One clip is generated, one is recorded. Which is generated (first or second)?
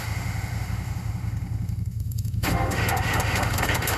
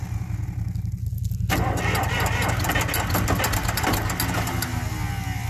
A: first